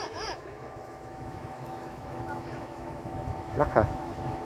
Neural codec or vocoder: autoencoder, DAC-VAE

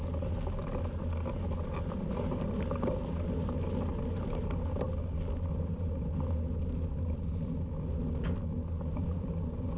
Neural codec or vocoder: none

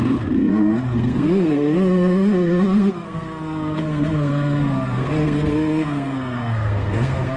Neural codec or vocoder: codec, SNAC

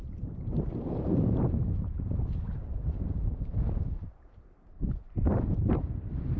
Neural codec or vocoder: vocoder, BigVGAN v2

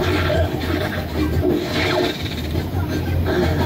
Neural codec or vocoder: none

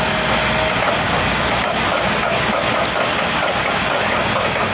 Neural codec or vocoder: none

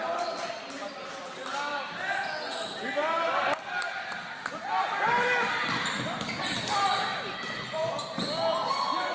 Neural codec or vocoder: none